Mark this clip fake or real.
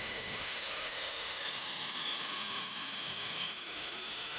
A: fake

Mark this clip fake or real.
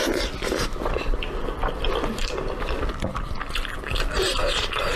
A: real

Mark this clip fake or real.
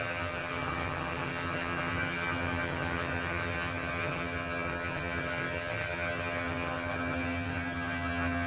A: fake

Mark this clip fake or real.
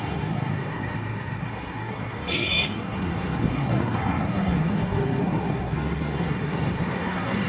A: fake